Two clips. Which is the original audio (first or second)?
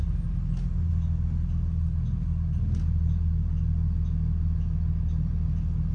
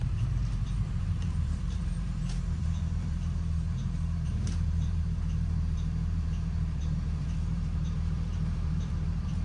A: first